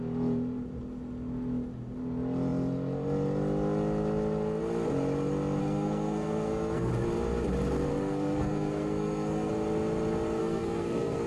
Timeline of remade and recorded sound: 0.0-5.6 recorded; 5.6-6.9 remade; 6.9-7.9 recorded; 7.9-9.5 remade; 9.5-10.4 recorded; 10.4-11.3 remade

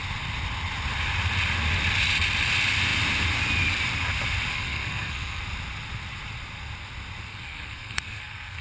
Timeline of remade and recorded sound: 0.0-4.5 recorded; 4.5-5.4 remade; 5.4-7.3 recorded; 7.3-8.6 remade

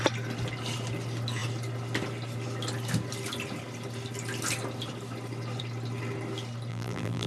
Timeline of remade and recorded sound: 0.0-6.7 recorded; 6.7-7.3 remade

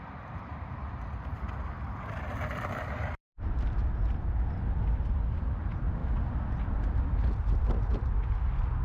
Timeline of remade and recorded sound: 0.0-6.0 remade; 6.0-6.5 recorded; 6.5-8.8 remade

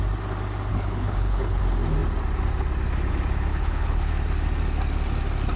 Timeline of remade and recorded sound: 0.0-0.7 recorded; 0.7-1.6 remade; 1.6-3.5 recorded; 3.5-4.1 remade; 4.1-5.6 recorded

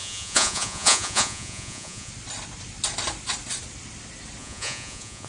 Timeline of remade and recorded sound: 0.0-2.1 remade; 2.1-4.4 recorded; 4.4-5.3 remade

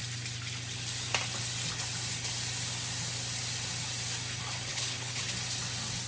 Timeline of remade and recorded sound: 0.0-4.7 recorded; 4.7-5.2 remade; 5.2-6.1 recorded

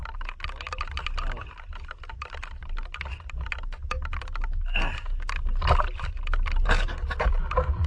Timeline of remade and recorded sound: 0.0-7.9 recorded